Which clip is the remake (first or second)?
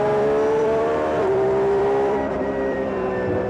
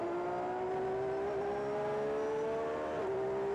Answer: first